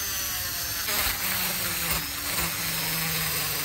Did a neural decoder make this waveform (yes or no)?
no